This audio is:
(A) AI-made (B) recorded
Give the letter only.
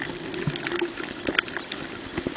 B